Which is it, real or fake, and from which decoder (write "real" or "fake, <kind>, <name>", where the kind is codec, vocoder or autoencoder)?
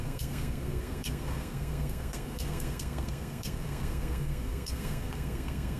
fake, codec, SNAC